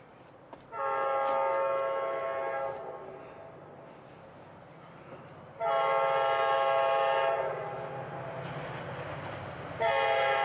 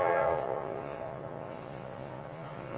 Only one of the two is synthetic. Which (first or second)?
second